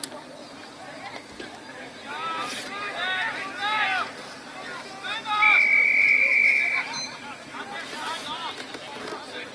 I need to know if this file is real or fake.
real